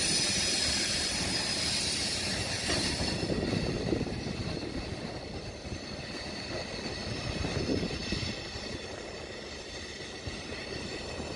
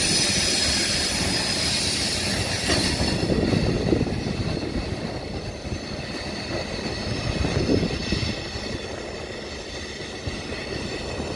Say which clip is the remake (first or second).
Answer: first